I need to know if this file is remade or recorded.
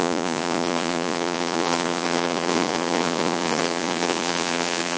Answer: remade